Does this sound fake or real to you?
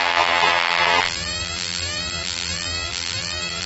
fake